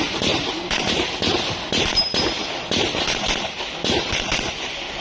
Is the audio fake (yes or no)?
no